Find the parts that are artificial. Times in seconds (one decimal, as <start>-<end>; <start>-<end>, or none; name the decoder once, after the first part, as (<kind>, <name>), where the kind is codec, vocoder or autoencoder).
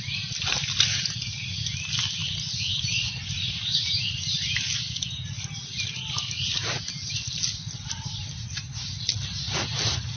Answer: none